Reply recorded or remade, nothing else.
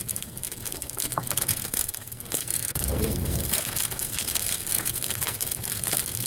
remade